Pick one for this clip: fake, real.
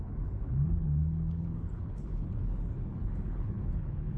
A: fake